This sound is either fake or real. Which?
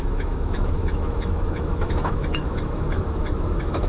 fake